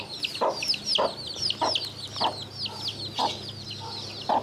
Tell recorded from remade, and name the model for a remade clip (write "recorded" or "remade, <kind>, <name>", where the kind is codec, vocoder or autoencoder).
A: recorded